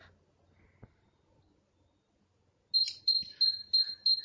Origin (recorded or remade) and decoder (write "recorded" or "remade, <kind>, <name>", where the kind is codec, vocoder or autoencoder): recorded